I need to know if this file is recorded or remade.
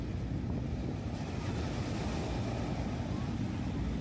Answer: recorded